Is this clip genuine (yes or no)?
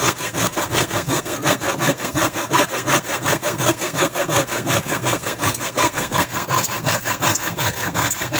no